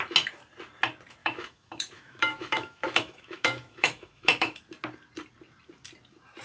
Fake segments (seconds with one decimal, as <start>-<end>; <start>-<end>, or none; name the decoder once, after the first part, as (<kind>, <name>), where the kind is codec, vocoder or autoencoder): 1.2-4.6 (autoencoder, DAC-VAE)

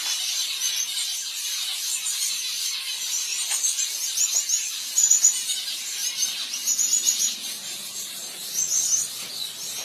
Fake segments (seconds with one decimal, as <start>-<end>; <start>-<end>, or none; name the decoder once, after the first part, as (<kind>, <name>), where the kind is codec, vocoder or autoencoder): none

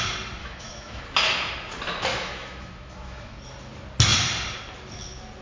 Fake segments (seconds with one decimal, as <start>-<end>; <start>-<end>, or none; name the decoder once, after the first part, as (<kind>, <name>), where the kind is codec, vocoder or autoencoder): 0.4-1.0 (autoencoder, DAC-VAE); 2.1-3.4

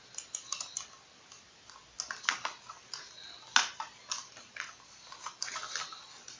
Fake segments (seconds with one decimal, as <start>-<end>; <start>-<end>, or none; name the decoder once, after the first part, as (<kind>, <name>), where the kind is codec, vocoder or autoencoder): none